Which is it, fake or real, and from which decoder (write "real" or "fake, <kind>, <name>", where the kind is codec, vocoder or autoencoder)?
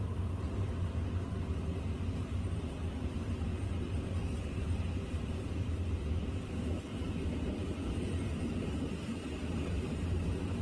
fake, vocoder, BigVGAN v2